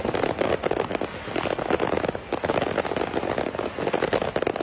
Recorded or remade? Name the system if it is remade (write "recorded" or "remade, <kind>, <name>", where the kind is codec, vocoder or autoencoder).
recorded